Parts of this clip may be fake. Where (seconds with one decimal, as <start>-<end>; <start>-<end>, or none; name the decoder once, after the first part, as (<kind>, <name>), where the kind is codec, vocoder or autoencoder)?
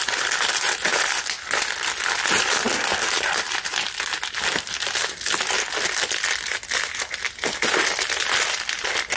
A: none